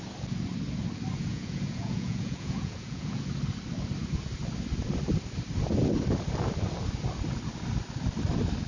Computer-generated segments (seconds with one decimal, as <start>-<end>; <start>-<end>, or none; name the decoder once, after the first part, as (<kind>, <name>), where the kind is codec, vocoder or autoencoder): 1.3-3.2 (vocoder, Vocos)